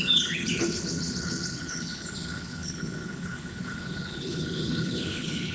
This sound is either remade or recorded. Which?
remade